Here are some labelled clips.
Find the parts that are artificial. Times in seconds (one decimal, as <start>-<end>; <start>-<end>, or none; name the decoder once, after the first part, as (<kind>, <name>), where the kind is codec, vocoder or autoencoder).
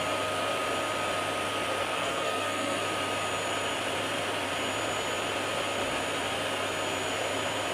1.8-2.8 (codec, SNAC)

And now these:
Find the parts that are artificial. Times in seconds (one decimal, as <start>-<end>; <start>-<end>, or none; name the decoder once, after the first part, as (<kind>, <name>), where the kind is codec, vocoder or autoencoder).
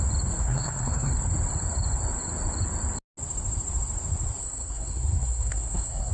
0.4-1.1 (codec, SNAC); 4.4-6.1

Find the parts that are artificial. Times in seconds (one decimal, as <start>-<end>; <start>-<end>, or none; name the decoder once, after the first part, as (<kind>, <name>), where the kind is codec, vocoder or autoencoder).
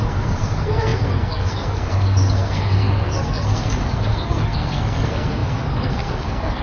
0.0-6.6 (codec, SNAC)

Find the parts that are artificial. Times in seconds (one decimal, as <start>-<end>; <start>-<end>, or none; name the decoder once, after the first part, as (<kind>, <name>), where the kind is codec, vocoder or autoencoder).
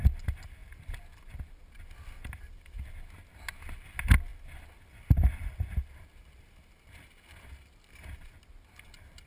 none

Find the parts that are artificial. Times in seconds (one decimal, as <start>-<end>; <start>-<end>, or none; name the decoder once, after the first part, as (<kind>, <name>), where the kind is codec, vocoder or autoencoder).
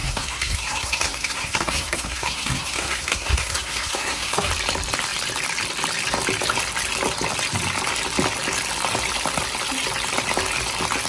0.0-4.5 (codec, SNAC)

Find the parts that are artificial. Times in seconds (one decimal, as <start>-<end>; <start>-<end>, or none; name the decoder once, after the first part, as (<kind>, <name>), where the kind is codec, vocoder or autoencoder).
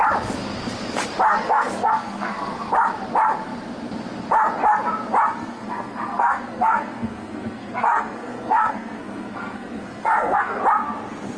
1.3-2.7 (codec, SNAC); 5.4-10.6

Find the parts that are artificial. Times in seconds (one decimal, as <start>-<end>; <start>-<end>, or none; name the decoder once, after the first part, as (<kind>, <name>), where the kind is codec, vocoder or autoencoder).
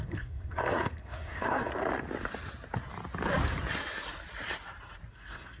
0.0-1.7 (codec, SNAC); 5.1-5.6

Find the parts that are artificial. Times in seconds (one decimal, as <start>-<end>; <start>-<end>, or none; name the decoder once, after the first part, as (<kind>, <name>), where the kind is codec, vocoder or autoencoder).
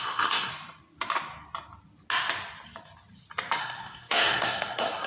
0.0-0.5 (codec, SNAC); 3.6-5.1